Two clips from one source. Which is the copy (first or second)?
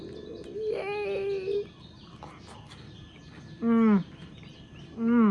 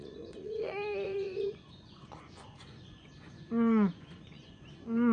second